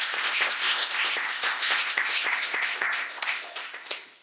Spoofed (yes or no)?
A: yes